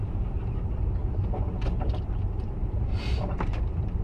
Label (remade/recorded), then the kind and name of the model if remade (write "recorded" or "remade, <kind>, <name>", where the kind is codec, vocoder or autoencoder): remade, vocoder, BigVGAN v2